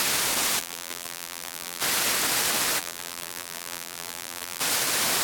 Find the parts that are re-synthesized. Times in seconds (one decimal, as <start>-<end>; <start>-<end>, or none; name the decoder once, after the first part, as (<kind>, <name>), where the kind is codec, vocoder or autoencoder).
0.6-1.8 (vocoder, BigVGAN v2); 2.8-4.6